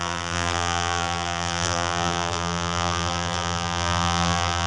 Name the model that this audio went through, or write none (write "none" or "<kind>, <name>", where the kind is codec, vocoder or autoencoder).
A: vocoder, BigVGAN v2